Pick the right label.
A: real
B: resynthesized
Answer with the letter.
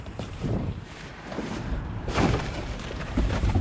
B